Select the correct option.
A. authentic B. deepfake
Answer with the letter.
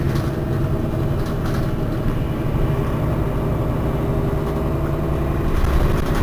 A